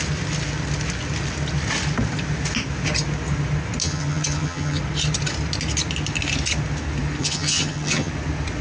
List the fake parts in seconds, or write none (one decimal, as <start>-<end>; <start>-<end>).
3.8-4.8; 7.2-8.1